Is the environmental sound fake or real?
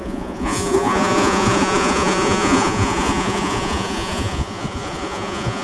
fake